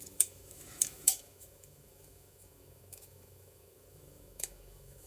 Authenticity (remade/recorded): remade